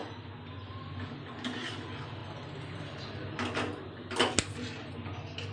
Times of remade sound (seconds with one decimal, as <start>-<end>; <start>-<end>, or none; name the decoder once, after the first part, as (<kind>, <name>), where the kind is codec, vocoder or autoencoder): none